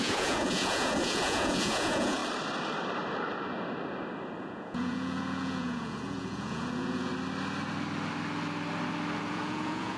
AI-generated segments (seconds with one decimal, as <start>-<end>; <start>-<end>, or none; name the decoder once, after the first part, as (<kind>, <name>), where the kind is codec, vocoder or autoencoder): 0.0-2.2 (vocoder, Vocos); 4.4-7.1; 9.2-10.0